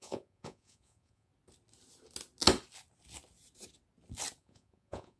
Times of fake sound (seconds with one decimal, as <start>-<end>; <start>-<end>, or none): 0.0-1.3; 4.4-5.2